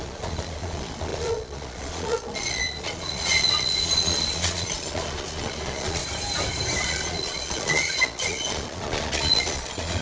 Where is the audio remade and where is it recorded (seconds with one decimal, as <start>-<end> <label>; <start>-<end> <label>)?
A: 0.0-6.0 remade; 6.0-6.8 recorded; 6.8-10.0 remade

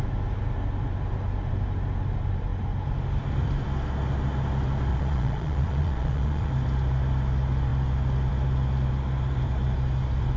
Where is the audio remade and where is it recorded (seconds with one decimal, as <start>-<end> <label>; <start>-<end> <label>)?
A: 0.0-4.9 recorded; 4.9-6.5 remade; 6.5-10.4 recorded